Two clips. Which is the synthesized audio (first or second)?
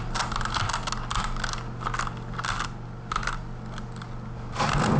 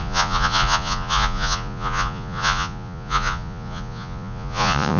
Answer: second